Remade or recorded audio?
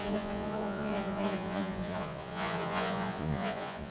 remade